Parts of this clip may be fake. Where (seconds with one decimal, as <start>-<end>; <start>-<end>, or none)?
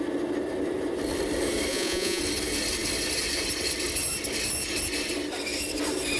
1.7-2.2